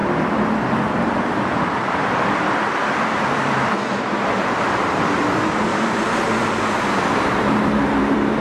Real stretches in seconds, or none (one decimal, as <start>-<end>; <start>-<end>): none